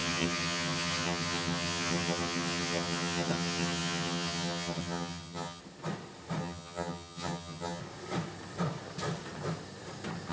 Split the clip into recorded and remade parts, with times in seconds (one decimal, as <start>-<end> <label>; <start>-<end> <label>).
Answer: 0.0-5.6 remade; 5.6-6.4 recorded; 6.4-7.8 remade; 7.8-10.3 recorded